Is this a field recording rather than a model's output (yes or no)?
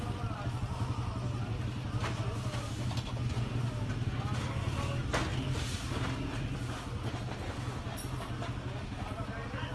yes